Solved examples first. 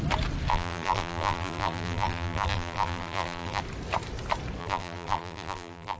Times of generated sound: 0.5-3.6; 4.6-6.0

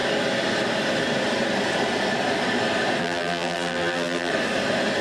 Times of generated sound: 3.0-4.3

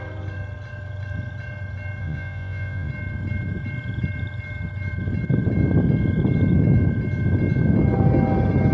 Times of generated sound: 2.0-2.9